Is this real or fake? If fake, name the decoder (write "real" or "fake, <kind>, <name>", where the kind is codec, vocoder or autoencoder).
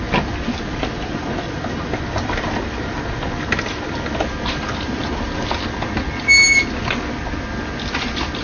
real